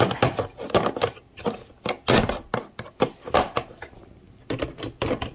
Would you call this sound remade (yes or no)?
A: no